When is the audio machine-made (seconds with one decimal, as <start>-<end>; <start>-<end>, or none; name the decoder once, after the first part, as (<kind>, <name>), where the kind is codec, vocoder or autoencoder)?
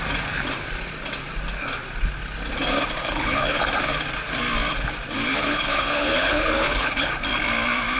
3.0-3.6 (codec, HILCodec); 5.3-7.1